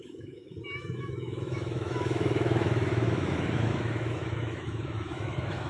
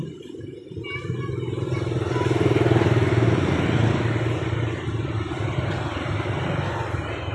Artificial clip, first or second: first